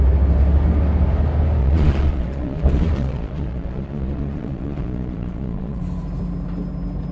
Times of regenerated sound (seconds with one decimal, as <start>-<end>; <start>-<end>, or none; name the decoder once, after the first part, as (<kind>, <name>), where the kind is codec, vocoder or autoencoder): 1.6-5.8 (vocoder, Vocos)